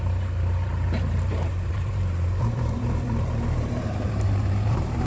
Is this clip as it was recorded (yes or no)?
no